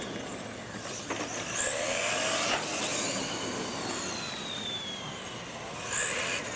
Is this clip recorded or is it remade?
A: recorded